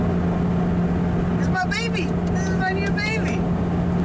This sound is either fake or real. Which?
real